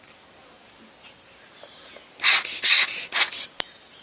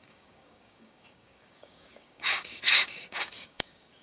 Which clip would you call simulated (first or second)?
second